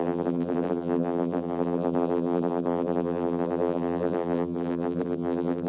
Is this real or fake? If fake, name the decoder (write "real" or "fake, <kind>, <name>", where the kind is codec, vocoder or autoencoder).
fake, vocoder, BigVGAN v2